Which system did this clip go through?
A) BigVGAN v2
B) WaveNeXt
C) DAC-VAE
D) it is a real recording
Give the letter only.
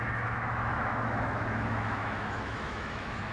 C